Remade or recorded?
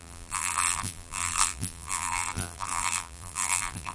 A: remade